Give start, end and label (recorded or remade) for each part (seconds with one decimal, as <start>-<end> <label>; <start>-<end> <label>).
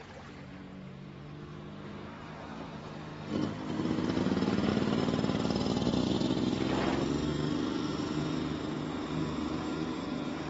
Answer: 0.0-1.2 remade; 1.2-1.9 recorded; 1.9-3.1 remade; 3.1-4.2 recorded; 4.2-4.7 remade; 4.7-7.9 recorded; 7.9-10.5 remade